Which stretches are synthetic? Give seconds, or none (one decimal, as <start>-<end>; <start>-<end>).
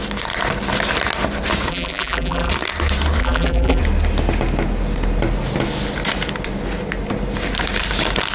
1.7-2.5; 3.2-3.8